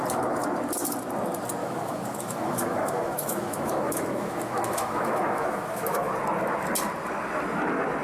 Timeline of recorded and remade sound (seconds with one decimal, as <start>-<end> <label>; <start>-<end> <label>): 0.0-1.6 recorded; 1.6-6.1 remade; 6.1-8.0 recorded